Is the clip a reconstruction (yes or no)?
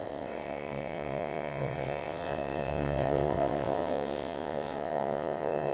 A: yes